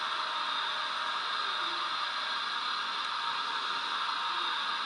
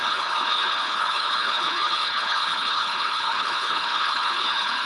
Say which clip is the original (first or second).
first